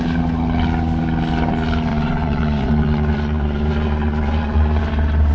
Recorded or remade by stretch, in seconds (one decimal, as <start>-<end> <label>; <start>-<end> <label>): 0.0-1.9 recorded; 1.9-4.8 remade; 4.8-5.3 recorded